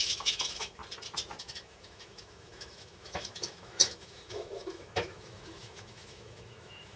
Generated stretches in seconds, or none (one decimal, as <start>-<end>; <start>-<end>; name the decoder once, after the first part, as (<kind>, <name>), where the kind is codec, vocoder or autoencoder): 0.0-0.8 (autoencoder, DAC-VAE); 1.4-7.0